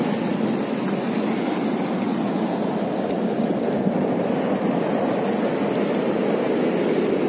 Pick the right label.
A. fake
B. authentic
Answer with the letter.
B